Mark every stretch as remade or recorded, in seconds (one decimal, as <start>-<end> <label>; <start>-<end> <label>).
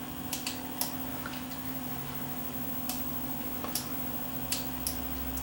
0.0-1.1 recorded; 1.1-4.3 remade; 4.3-5.4 recorded